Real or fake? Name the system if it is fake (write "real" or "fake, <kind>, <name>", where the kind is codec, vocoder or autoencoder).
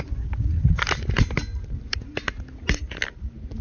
real